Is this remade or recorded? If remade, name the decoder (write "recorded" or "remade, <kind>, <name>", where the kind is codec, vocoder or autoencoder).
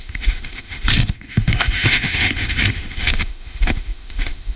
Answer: remade, autoencoder, DAC-VAE